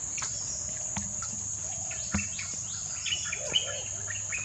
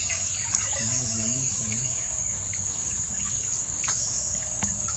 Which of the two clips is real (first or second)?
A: first